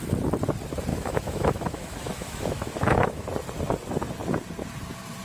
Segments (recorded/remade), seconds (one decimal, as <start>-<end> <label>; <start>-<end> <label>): 0.0-0.9 recorded; 0.9-3.3 remade; 3.3-5.2 recorded